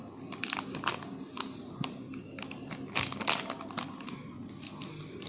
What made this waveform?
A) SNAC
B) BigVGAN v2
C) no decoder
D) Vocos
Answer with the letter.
C